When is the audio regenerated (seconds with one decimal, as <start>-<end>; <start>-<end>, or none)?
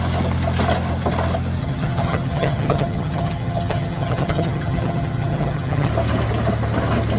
1.6-5.9